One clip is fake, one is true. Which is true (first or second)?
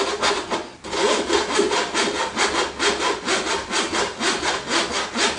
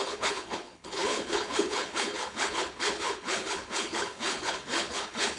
first